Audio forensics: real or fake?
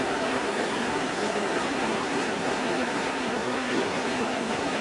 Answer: fake